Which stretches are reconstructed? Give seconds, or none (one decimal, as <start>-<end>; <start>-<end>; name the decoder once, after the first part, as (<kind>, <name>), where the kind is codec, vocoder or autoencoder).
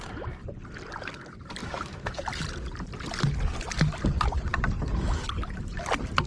1.6-2.2 (autoencoder, DAC-VAE)